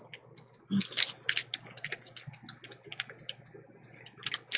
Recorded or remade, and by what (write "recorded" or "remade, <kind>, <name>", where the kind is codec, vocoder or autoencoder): recorded